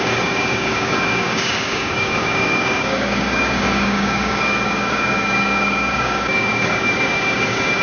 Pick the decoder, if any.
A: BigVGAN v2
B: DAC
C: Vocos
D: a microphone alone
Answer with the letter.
B